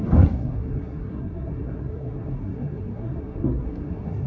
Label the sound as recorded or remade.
remade